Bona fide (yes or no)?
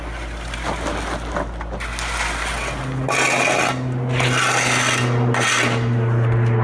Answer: yes